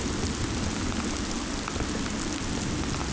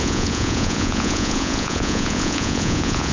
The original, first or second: first